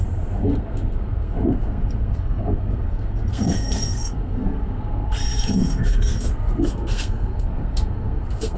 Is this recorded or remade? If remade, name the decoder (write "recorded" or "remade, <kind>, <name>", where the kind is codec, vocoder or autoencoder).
remade, codec, SNAC